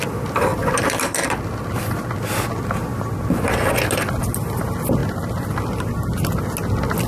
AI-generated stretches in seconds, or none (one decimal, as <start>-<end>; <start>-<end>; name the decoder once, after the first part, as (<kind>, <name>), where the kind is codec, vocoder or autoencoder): 0.5-1.7 (vocoder, BigVGAN v2); 5.0-5.6